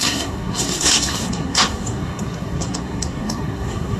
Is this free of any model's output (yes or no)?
no